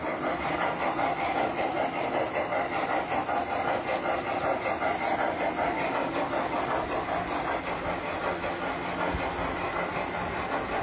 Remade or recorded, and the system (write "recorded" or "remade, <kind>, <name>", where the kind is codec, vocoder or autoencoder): recorded